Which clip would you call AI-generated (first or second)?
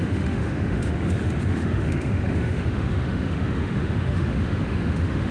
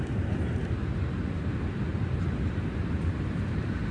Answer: first